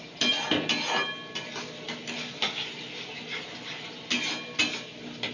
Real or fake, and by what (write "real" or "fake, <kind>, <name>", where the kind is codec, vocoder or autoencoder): real